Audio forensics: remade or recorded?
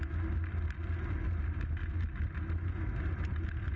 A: recorded